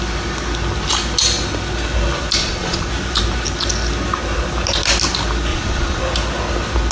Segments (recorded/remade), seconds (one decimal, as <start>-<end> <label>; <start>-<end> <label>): 0.0-2.4 recorded; 2.4-2.9 remade; 2.9-5.5 recorded; 5.5-6.0 remade; 6.0-6.9 recorded